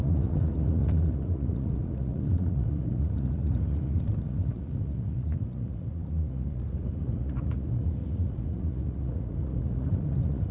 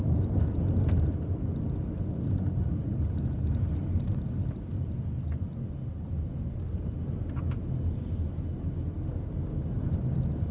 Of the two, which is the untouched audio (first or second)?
second